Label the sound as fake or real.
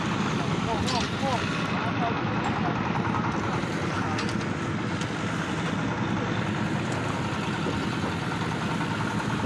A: real